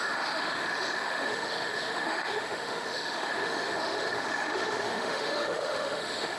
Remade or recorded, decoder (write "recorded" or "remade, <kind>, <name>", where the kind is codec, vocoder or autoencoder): remade, autoencoder, DAC-VAE